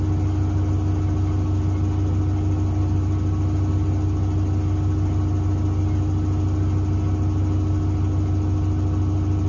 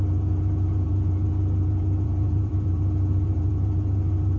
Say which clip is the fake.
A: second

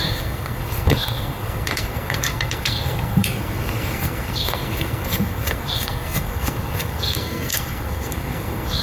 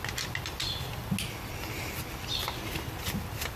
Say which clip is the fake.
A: first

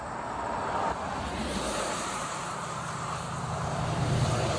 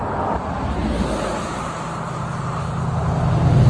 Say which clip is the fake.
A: first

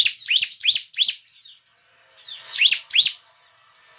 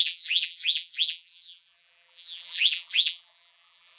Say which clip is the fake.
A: second